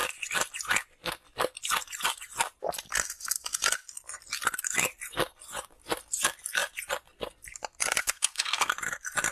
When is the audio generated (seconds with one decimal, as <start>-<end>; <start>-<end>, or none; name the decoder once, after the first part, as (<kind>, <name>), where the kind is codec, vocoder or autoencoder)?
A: 8.0-8.7 (codec, SNAC)